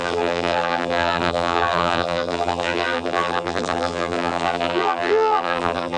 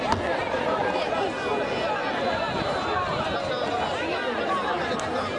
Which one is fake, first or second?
first